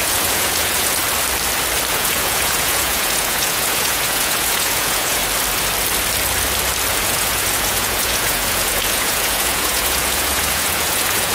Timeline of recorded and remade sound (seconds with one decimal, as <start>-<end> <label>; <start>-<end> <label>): 0.0-1.0 remade; 1.0-1.9 recorded; 1.9-5.2 remade; 5.2-6.9 recorded; 6.9-11.3 remade